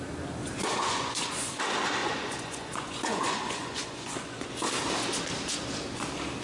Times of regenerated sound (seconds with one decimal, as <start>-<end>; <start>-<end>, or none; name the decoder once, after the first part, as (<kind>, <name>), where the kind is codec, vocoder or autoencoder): 0.4-1.6 (vocoder, Vocos); 2.0-4.5

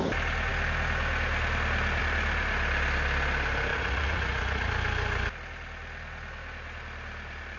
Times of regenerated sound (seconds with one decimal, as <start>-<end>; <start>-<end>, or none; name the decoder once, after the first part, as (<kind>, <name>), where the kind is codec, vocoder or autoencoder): 3.7-4.7 (vocoder, Vocos)

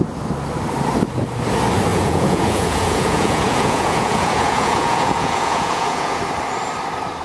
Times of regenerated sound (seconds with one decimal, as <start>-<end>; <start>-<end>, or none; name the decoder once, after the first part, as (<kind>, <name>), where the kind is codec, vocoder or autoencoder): 1.9-6.2 (vocoder, Vocos)

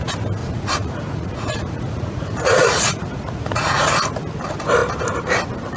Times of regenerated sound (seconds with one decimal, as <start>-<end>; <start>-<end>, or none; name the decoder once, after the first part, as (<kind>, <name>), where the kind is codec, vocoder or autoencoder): 0.4-3.9 (vocoder, Vocos)

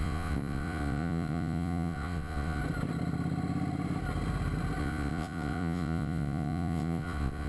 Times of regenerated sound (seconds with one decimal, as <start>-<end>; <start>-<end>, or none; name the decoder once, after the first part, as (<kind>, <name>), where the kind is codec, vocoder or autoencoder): 0.0-2.6 (vocoder, Vocos); 4.8-7.5